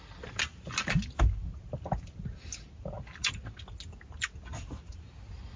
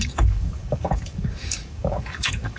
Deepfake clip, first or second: second